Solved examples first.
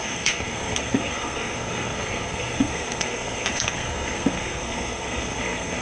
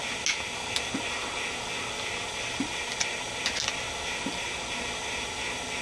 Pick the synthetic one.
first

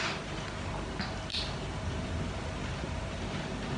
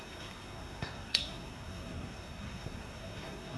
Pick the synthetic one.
second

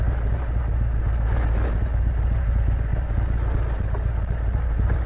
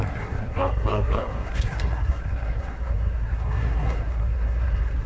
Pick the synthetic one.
second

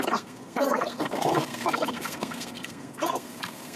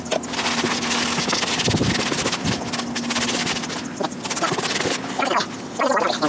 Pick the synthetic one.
first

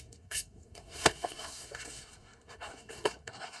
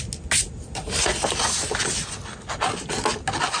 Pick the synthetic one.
first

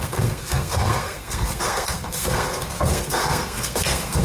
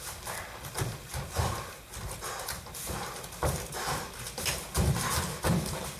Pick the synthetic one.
first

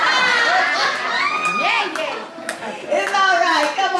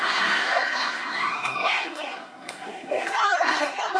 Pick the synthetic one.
second